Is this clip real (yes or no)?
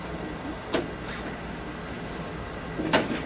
yes